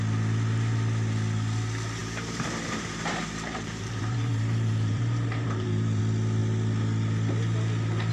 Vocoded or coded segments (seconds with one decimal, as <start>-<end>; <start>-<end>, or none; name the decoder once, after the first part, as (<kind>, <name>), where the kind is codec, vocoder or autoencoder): 2.0-6.0 (vocoder, BigVGAN v2)